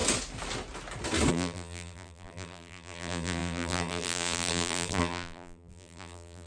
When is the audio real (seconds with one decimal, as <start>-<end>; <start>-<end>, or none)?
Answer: 0.0-1.3

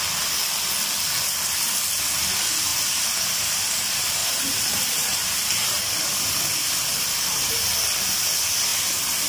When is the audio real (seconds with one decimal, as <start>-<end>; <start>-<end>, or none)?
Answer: 0.0-2.7; 3.6-4.2; 5.8-9.3

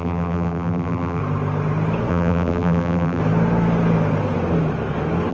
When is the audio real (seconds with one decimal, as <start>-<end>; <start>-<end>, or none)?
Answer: 1.2-2.1; 3.2-5.3

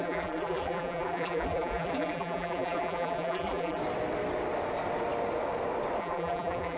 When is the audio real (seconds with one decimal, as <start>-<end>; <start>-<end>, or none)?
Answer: 3.8-6.0

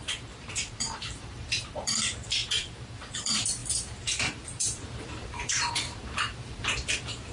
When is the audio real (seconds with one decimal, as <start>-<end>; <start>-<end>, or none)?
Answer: none